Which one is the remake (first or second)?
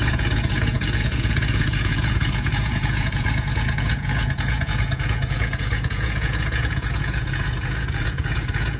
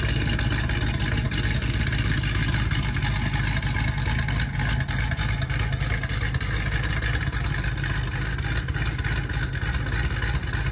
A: first